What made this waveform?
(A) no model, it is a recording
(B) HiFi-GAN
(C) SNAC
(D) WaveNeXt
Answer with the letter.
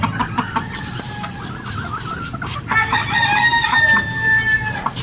A